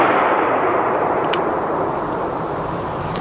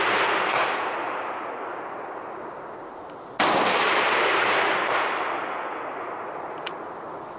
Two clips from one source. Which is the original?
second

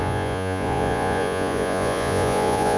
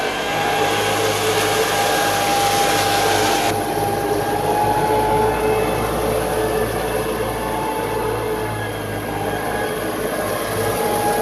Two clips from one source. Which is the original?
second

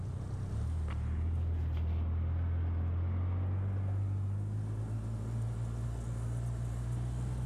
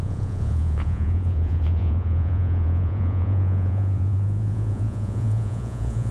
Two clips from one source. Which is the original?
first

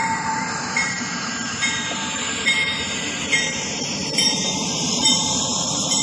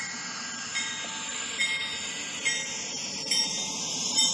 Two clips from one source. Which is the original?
second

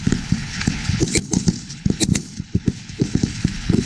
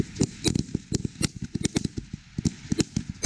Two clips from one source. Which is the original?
second